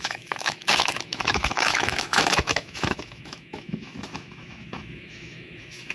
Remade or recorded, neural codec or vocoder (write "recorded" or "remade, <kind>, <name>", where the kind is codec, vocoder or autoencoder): remade, autoencoder, DAC-VAE